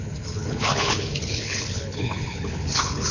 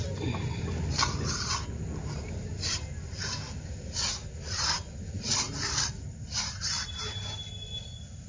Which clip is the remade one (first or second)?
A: first